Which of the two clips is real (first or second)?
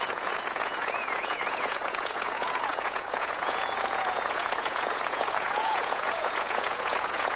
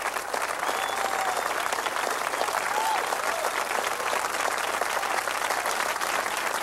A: second